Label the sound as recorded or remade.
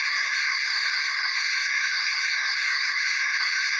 remade